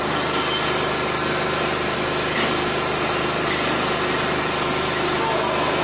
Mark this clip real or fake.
real